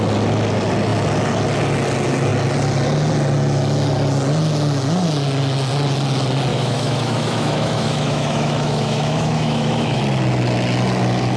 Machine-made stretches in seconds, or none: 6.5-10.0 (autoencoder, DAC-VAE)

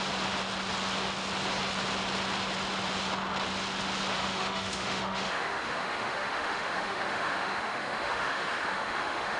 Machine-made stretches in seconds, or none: 4.2-9.4 (autoencoder, DAC-VAE)